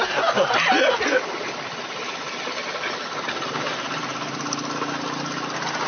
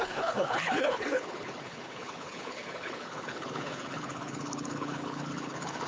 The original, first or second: first